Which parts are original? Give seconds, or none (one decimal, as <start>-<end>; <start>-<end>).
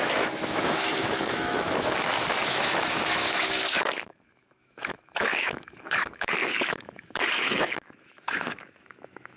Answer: none